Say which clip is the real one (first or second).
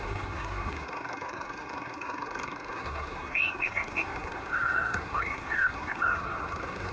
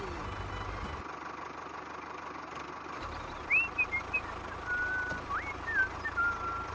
second